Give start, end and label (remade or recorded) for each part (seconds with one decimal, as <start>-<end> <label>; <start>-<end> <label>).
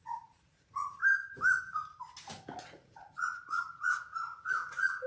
0.0-1.0 remade; 1.0-2.6 recorded; 2.6-5.1 remade